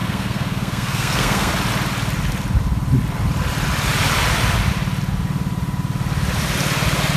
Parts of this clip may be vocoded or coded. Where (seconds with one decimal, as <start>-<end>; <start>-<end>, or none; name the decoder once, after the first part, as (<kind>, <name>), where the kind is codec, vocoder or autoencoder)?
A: 0.0-1.5 (codec, SNAC)